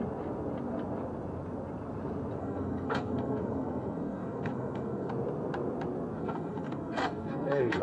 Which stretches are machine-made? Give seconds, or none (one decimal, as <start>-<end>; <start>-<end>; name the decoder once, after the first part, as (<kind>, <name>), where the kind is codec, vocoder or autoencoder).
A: 2.4-5.1 (codec, SNAC); 6.2-7.8